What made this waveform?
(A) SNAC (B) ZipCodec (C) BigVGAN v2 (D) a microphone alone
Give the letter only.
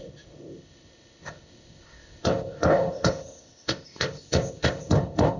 B